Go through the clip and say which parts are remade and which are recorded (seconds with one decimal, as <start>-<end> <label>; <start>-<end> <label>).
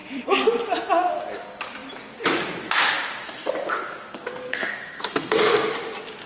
0.0-4.1 recorded; 4.1-5.7 remade; 5.7-6.3 recorded